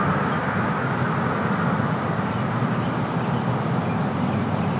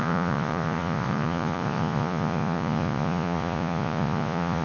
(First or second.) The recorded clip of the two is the first